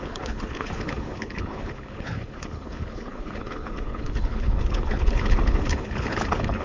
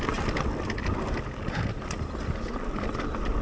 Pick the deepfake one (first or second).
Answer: first